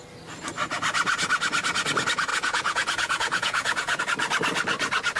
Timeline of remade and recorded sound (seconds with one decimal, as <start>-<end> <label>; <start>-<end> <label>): 0.0-2.3 recorded; 2.3-4.0 remade; 4.0-5.2 recorded